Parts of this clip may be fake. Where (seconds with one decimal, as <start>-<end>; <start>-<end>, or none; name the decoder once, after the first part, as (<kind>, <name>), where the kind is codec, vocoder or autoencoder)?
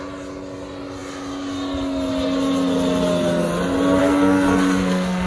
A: 4.0-5.3 (codec, SNAC)